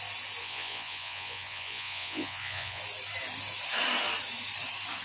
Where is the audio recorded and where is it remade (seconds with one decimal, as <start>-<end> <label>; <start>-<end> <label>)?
0.0-0.4 recorded; 0.4-2.8 remade; 2.8-5.0 recorded